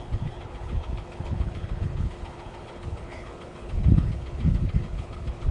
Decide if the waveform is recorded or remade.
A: remade